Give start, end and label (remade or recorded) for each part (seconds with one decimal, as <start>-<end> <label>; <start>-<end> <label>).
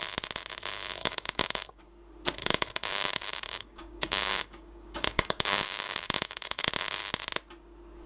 0.0-1.0 recorded; 1.0-1.8 remade; 1.8-2.4 recorded; 2.4-6.7 remade; 6.7-8.1 recorded